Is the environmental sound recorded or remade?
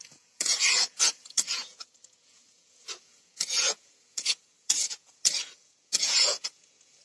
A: remade